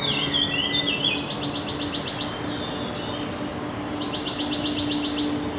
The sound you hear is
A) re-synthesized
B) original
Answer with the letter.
B